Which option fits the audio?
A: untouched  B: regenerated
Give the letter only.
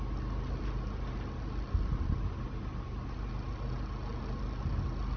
A